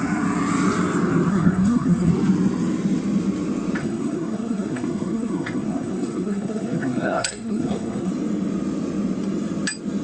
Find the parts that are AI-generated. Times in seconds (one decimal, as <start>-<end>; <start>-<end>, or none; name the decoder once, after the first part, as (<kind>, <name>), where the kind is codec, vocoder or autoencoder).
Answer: 1.3-2.1 (codec, SNAC); 3.8-8.1